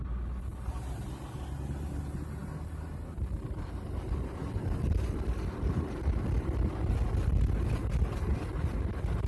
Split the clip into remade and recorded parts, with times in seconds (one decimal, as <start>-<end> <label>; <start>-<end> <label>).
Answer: 0.0-9.3 recorded